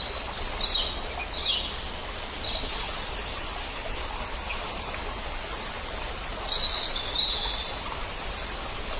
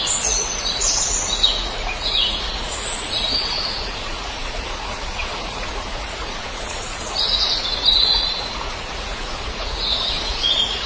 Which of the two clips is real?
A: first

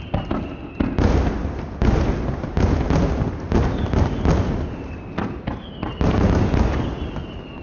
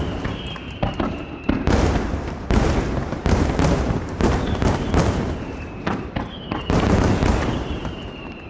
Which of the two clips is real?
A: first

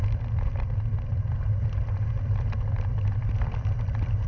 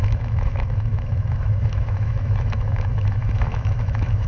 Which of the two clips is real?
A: first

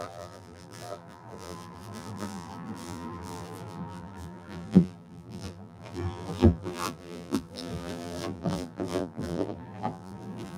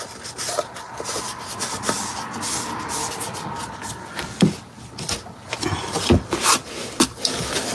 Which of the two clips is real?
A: second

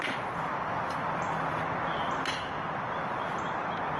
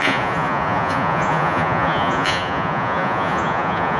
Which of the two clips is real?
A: first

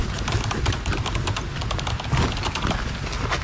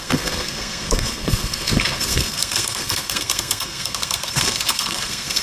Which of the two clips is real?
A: first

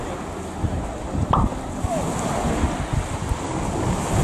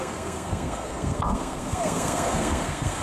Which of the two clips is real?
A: first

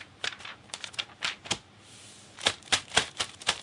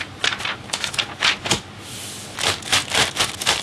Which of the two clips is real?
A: second